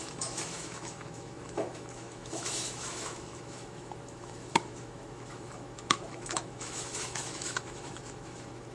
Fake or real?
fake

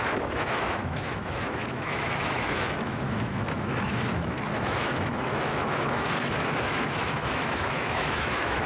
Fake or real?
fake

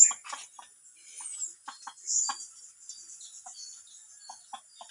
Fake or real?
real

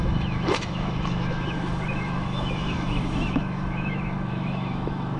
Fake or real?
fake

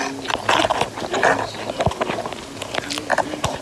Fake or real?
real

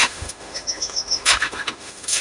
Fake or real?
fake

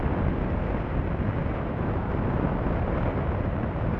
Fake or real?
real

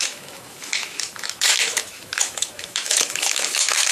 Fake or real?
fake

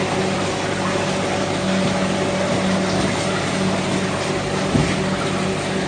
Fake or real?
real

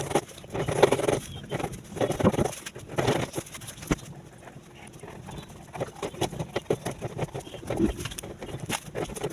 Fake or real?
real